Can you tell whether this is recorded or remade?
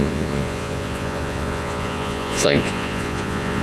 remade